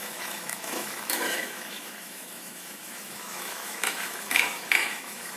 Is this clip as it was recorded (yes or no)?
no